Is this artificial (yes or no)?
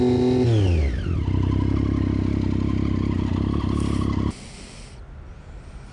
no